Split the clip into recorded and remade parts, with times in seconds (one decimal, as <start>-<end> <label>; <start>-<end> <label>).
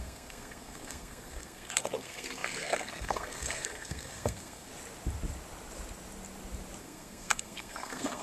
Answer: 0.0-4.7 remade; 4.7-6.8 recorded; 6.8-8.2 remade